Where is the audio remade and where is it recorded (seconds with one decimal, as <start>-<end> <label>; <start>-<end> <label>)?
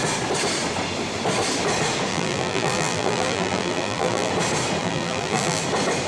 0.0-2.1 recorded; 2.1-4.3 remade; 4.3-4.8 recorded; 4.8-5.6 remade; 5.6-6.1 recorded